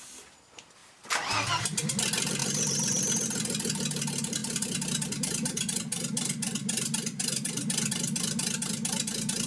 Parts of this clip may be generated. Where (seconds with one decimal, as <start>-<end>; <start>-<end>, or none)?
2.4-3.0; 4.4-7.9